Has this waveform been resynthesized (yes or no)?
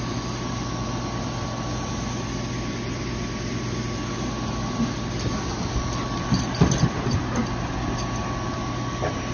no